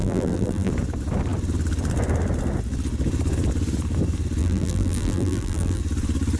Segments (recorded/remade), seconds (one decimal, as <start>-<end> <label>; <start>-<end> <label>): 0.0-0.7 remade; 0.7-4.4 recorded; 4.4-5.8 remade; 5.8-6.4 recorded